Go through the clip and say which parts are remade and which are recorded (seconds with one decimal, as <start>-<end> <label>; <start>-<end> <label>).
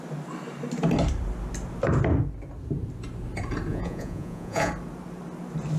0.0-3.7 recorded; 3.7-4.7 remade; 4.7-5.8 recorded